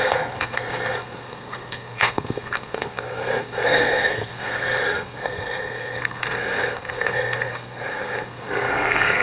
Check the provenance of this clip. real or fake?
fake